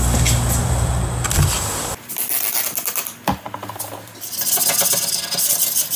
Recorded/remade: recorded